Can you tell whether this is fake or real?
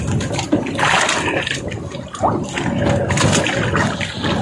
real